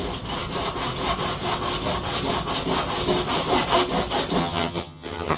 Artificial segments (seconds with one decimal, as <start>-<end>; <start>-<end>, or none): 4.4-5.4

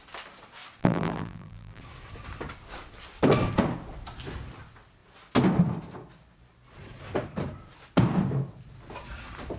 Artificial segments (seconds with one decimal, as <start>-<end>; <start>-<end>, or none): 0.8-1.8

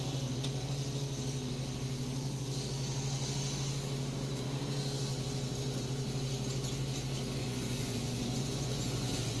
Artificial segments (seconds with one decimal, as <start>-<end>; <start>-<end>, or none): 7.4-9.4

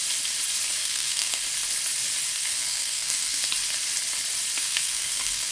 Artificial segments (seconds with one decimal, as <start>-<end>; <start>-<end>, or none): 0.8-1.4; 2.4-3.5; 4.6-5.5

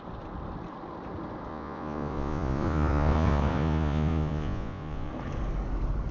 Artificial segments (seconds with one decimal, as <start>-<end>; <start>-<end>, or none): 1.5-5.1